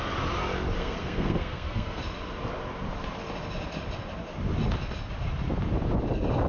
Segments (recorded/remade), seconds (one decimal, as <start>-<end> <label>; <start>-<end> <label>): 0.0-0.8 recorded; 0.8-2.0 remade; 2.0-6.5 recorded